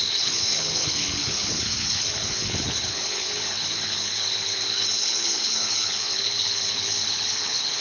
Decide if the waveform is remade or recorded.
remade